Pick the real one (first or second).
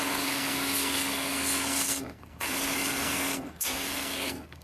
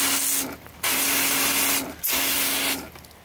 second